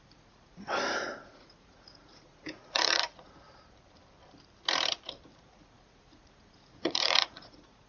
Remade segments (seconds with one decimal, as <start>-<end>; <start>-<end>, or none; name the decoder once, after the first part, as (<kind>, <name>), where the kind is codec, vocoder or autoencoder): 0.0-3.3 (vocoder, Vocos); 5.3-7.9